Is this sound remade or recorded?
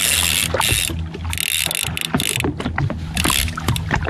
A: recorded